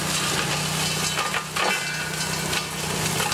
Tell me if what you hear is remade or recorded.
recorded